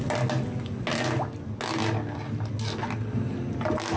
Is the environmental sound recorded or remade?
recorded